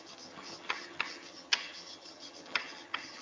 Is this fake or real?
fake